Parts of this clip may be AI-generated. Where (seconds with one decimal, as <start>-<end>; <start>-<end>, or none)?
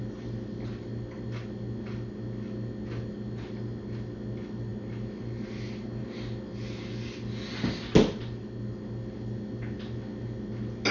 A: none